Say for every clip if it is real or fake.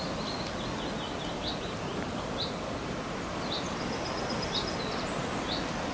real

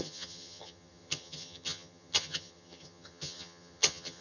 fake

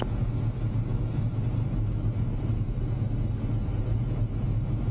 real